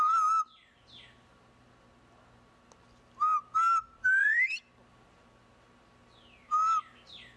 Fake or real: real